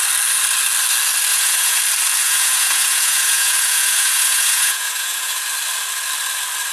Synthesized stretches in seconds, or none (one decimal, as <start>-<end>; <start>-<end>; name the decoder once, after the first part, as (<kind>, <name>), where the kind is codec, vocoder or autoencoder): 1.3-1.8 (vocoder, Vocos); 2.2-5.4